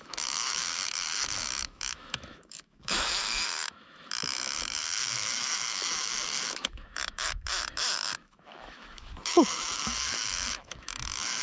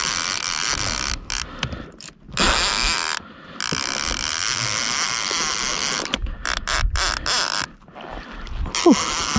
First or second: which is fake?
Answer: first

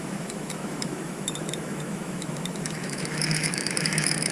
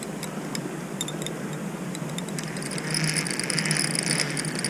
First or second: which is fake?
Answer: first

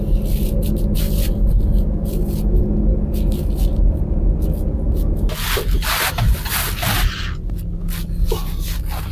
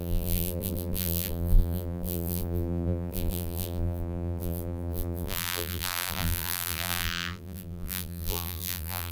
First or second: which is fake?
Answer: second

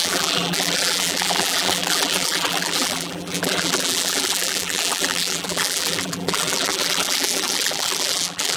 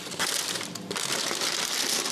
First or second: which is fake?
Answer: first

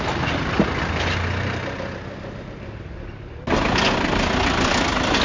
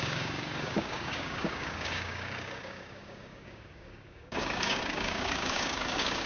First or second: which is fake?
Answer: second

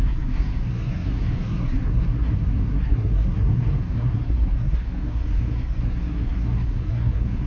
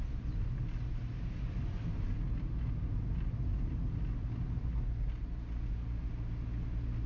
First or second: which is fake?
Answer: first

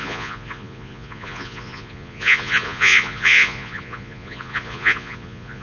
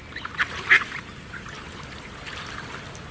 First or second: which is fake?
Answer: first